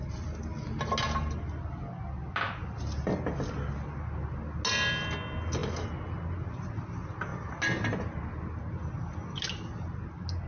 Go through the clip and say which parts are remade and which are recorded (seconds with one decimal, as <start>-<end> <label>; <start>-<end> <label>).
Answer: 0.0-10.5 recorded